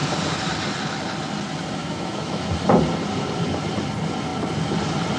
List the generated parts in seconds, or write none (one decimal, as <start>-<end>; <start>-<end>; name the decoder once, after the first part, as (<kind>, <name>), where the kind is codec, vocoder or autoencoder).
1.8-2.5 (autoencoder, DAC-VAE)